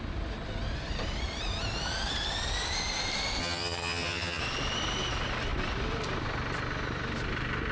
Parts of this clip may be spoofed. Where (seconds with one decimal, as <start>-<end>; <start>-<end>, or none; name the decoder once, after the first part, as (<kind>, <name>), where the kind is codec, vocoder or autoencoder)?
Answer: 3.4-4.4 (vocoder, HiFi-GAN)